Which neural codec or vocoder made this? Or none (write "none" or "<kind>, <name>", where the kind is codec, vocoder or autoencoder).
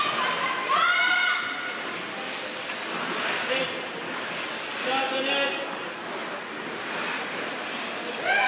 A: none